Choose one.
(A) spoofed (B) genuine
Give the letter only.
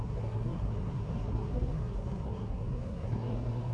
A